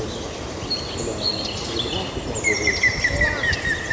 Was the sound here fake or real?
real